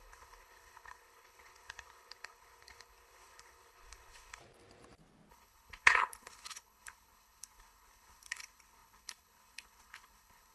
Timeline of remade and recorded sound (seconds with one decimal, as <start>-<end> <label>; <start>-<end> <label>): 0.0-4.4 remade; 4.4-5.3 recorded; 5.3-10.5 remade